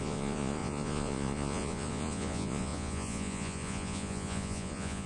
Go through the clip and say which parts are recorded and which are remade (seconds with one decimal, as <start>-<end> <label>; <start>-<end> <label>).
0.0-5.1 remade